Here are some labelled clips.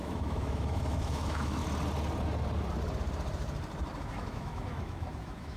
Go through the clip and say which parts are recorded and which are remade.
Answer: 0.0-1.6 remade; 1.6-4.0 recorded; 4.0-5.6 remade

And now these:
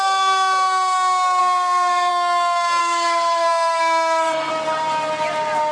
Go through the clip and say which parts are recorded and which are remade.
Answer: 0.0-1.4 recorded; 1.4-2.1 remade; 2.1-2.8 recorded; 2.8-4.5 remade; 4.5-5.7 recorded

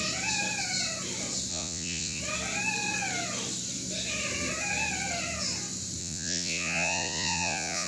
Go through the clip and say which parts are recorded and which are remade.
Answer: 0.0-1.5 recorded; 1.5-2.2 remade; 2.2-6.0 recorded; 6.0-7.9 remade

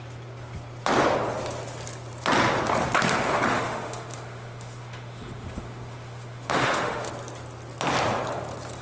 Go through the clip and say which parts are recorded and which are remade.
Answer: 0.0-3.5 recorded; 3.5-7.1 remade; 7.1-8.8 recorded

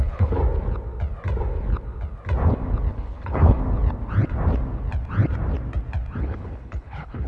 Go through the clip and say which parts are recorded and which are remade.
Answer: 0.0-0.4 remade; 0.4-2.9 recorded; 2.9-3.6 remade; 3.6-6.2 recorded; 6.2-7.3 remade

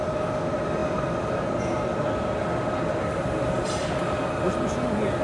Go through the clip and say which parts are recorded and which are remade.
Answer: 0.0-5.2 recorded